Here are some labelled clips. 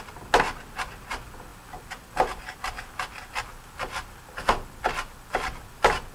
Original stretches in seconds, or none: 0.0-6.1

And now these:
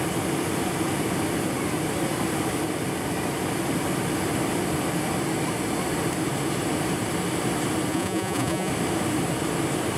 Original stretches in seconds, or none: 0.0-7.9; 8.7-10.0

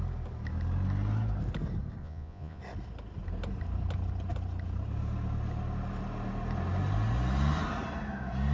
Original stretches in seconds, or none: 0.0-2.0; 2.6-8.5

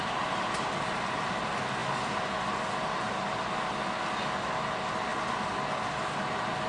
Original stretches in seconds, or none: 0.0-6.7